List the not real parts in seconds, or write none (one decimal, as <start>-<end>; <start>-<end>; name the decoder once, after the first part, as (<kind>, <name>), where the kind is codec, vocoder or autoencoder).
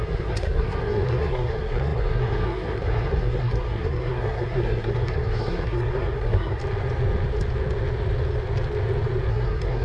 0.0-6.6 (codec, SNAC); 9.3-9.8